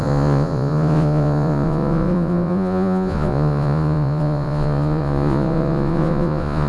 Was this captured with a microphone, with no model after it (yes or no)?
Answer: no